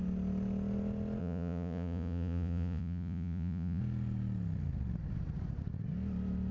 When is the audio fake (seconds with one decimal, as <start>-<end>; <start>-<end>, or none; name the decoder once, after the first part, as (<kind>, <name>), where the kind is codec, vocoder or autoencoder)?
1.2-3.8 (vocoder, Vocos)